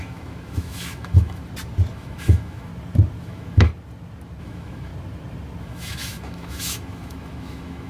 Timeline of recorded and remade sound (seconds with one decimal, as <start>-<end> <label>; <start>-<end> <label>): 0.0-1.4 remade; 1.4-1.9 recorded; 1.9-2.7 remade; 2.7-3.2 recorded; 3.2-3.7 remade; 3.7-4.4 recorded; 4.4-4.9 remade; 4.9-5.6 recorded; 5.6-7.9 remade